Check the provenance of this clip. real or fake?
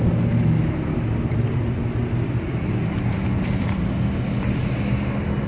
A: real